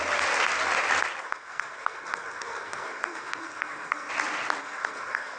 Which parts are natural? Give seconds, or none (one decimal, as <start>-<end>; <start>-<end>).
0.0-1.2; 4.1-4.6